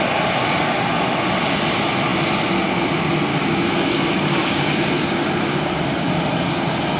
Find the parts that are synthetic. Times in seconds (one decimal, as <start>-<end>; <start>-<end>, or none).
3.3-5.9